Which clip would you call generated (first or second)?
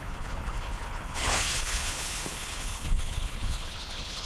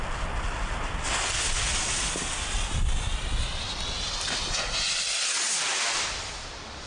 first